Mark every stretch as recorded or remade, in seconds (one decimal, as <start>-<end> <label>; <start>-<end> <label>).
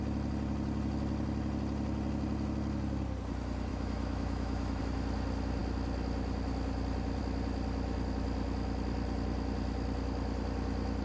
0.0-3.7 recorded; 3.7-4.8 remade; 4.8-11.0 recorded